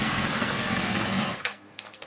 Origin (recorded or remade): remade